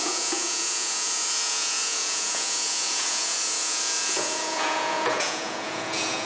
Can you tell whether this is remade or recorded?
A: remade